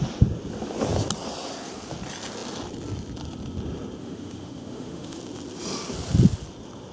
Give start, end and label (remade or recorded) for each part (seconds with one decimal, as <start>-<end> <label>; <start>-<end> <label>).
0.0-4.0 recorded; 4.0-5.2 remade; 5.2-6.9 recorded

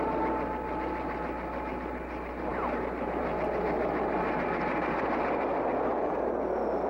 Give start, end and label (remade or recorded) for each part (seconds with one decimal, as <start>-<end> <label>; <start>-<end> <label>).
0.0-2.5 recorded; 2.5-3.2 remade; 3.2-5.9 recorded; 5.9-6.4 remade; 6.4-6.9 recorded

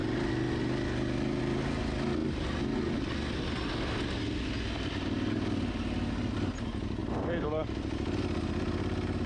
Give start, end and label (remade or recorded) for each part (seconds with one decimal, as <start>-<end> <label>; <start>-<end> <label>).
0.0-7.0 recorded; 7.0-9.3 remade

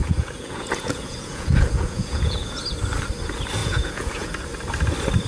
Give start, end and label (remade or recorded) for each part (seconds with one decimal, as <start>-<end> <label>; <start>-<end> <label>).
0.0-2.6 remade; 2.6-3.6 recorded; 3.6-4.3 remade; 4.3-5.3 recorded

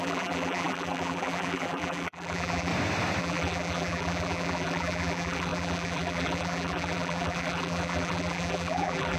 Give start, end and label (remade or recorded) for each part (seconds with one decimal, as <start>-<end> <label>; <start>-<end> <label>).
0.0-2.7 remade; 2.7-3.2 recorded; 3.2-9.2 remade

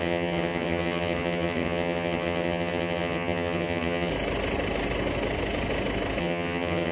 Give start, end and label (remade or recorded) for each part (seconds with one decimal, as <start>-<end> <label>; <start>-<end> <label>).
0.0-4.1 remade; 4.1-6.2 recorded; 6.2-6.9 remade